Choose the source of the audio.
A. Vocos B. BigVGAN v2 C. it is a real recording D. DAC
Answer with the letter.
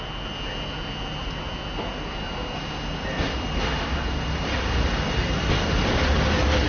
C